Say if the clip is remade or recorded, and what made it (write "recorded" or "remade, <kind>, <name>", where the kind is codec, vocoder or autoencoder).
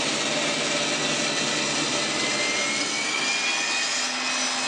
recorded